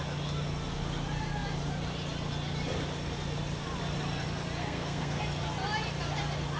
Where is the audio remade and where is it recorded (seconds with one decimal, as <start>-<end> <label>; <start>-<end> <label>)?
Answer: 0.0-4.6 recorded; 4.6-5.2 remade; 5.2-6.6 recorded